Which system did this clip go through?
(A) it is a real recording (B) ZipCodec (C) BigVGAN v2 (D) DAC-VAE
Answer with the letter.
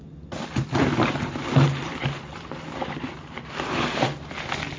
C